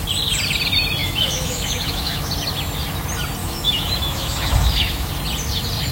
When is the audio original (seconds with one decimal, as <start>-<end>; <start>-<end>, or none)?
0.0-1.0; 2.3-3.4; 5.1-5.9